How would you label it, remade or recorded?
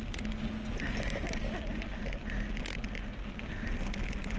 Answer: recorded